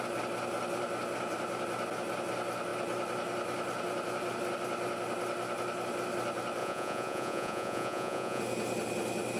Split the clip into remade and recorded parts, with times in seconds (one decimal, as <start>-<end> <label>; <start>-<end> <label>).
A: 0.0-6.6 recorded; 6.6-8.4 remade; 8.4-9.4 recorded